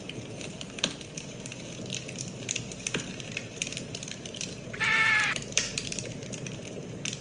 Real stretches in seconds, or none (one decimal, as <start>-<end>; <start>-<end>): 1.5-2.4